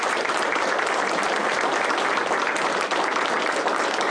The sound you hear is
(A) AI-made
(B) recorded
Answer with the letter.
B